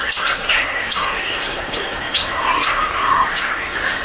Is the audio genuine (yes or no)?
no